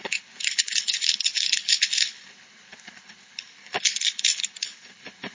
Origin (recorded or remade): remade